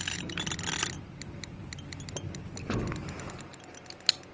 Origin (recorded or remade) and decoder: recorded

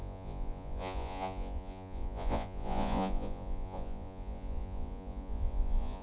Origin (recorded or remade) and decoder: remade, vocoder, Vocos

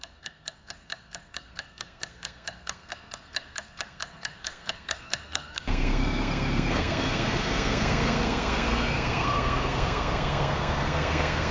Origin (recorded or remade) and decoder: remade, codec, SNAC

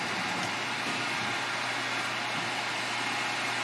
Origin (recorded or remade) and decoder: recorded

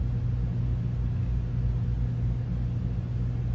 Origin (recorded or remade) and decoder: recorded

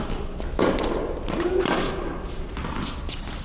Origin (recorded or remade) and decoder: recorded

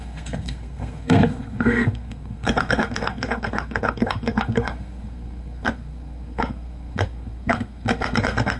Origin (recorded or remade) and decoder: remade, codec, SNAC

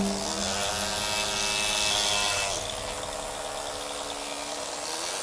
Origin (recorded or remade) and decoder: recorded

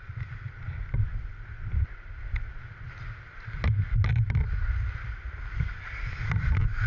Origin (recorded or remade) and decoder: recorded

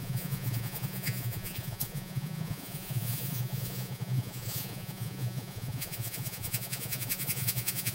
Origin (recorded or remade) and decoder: remade, vocoder, Vocos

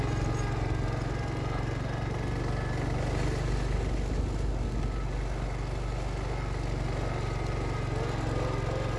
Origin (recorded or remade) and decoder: recorded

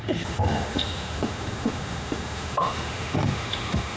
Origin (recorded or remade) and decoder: remade, autoencoder, DAC-VAE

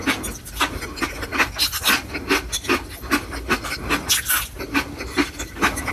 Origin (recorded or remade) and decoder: recorded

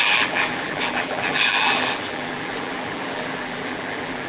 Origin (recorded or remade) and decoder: remade, vocoder, BigVGAN v2